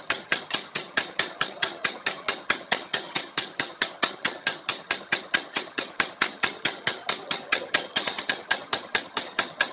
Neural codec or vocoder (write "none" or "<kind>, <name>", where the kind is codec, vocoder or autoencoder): vocoder, HiFi-GAN